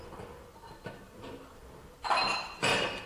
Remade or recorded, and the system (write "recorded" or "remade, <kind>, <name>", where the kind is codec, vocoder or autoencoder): remade, vocoder, BigVGAN v2